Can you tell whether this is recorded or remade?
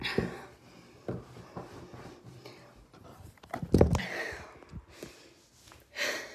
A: recorded